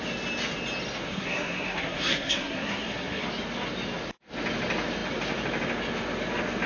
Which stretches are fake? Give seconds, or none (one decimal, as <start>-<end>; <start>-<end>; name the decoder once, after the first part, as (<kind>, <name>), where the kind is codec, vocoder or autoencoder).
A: 1.1-3.2 (codec, SNAC)